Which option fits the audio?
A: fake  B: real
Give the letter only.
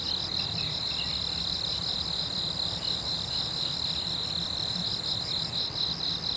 B